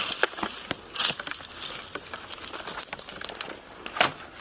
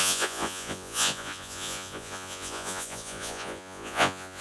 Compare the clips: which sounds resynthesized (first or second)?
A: second